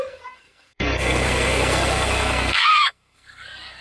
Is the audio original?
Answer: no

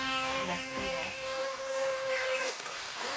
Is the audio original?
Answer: no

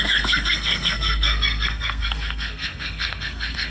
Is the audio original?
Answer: no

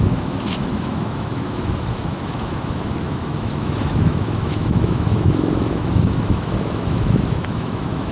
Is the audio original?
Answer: no